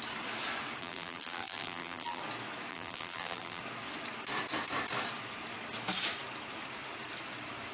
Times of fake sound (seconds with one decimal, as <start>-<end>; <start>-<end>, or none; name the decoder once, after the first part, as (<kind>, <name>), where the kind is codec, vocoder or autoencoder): 0.8-2.2 (vocoder, BigVGAN v2); 2.7-3.6